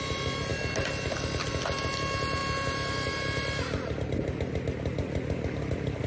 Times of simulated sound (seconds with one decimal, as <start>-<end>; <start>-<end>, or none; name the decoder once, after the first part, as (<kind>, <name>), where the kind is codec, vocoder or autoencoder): none